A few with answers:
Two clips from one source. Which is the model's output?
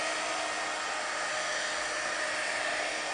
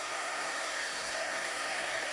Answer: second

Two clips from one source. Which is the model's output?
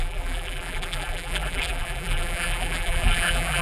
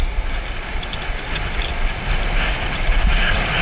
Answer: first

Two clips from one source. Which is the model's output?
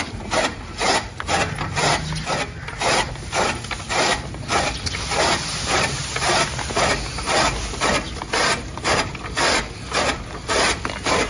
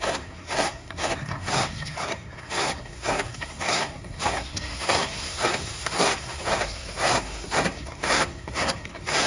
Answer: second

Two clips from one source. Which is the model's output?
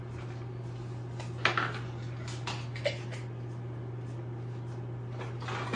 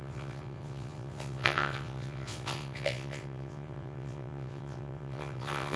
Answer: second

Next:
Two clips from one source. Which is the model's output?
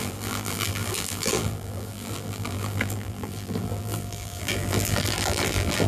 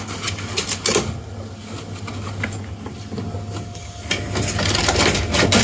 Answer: first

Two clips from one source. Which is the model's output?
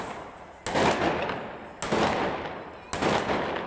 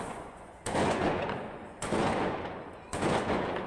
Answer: second